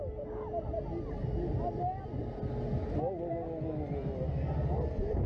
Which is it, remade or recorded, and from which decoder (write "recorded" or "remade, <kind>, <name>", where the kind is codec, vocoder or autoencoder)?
recorded